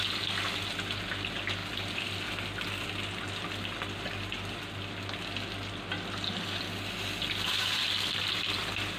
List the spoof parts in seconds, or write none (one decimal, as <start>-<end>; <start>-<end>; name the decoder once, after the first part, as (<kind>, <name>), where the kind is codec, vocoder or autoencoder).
none